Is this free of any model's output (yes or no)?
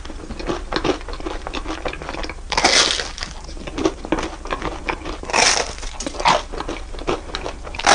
yes